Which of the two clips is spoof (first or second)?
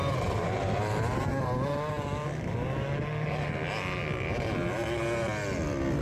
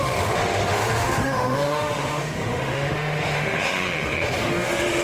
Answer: second